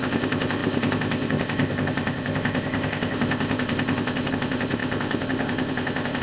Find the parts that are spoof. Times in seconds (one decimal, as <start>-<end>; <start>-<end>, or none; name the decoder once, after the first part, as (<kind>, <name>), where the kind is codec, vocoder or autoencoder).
0.0-6.2 (codec, ZipCodec)

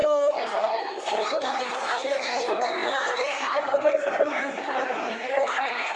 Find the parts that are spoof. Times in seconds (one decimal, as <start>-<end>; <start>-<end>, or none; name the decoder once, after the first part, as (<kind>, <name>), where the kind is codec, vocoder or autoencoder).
0.0-6.0 (codec, SNAC)

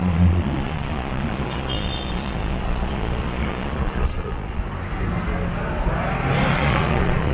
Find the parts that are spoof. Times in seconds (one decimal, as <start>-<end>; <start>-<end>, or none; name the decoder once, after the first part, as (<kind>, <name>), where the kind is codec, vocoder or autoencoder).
0.0-4.6 (vocoder, Vocos); 6.5-7.3

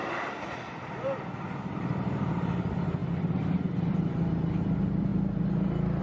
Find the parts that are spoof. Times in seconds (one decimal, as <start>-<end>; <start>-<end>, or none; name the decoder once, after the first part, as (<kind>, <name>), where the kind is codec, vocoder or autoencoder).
1.7-5.1 (vocoder, BigVGAN v2)

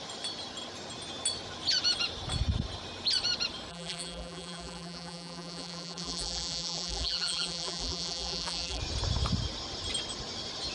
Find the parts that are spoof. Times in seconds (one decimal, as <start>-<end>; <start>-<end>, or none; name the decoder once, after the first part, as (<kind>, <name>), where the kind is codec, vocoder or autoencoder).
3.7-8.8 (vocoder, BigVGAN v2)

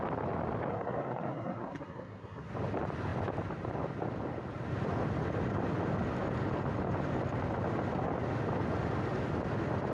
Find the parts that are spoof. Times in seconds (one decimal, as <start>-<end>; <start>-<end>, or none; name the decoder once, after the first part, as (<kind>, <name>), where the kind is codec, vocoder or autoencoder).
0.7-2.5 (codec, SNAC)